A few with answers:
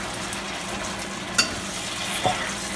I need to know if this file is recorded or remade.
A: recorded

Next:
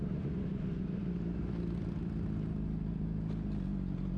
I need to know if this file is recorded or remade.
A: recorded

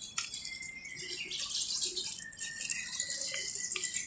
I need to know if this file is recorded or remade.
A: recorded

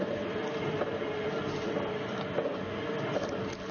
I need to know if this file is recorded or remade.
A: recorded